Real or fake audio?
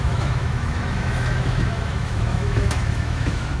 fake